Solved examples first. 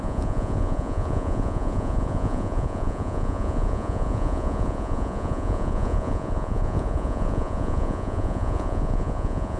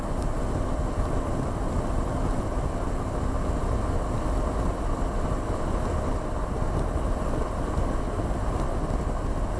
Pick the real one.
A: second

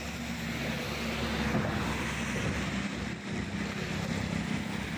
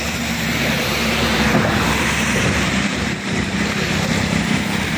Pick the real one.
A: first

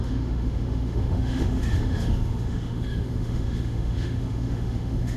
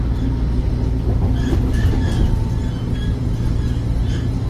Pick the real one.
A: second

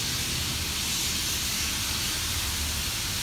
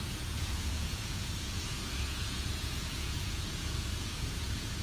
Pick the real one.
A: first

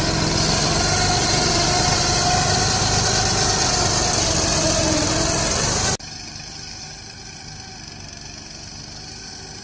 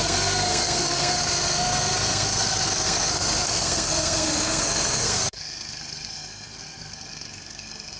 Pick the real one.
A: first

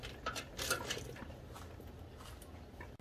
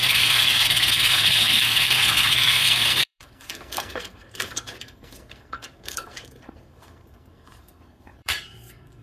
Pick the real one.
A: first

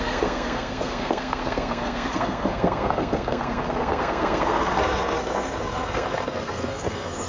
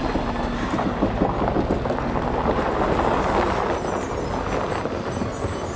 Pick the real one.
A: second